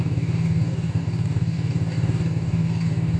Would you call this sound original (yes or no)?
no